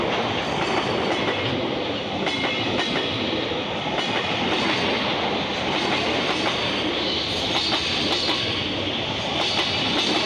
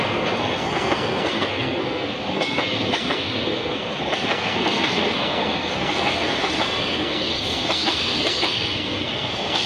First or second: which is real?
first